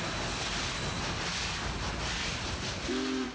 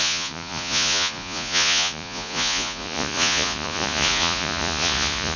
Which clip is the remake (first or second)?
second